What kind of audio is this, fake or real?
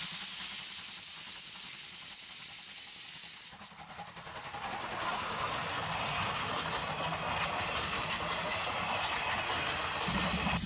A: real